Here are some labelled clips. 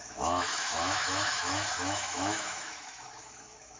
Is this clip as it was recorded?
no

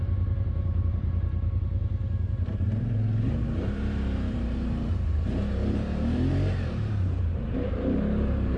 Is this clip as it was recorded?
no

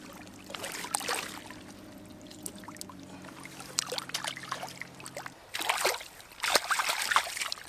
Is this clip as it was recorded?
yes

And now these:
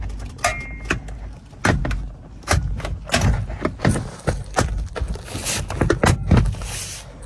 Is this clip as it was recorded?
yes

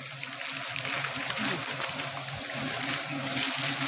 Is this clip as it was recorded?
yes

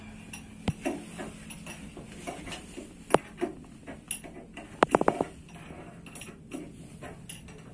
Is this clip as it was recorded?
yes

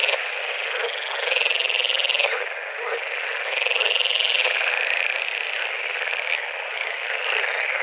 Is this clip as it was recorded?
yes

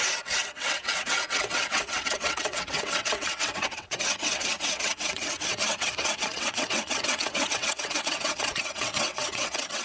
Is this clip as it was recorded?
no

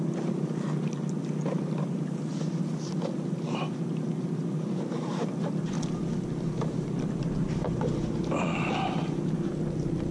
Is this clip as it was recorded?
yes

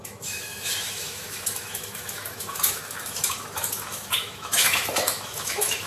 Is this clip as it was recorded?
no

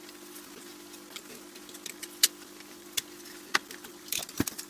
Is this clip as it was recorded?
yes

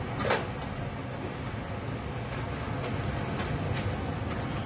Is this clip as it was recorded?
yes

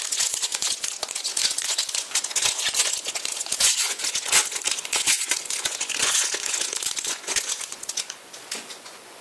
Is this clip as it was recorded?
no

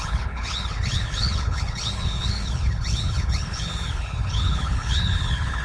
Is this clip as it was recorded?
no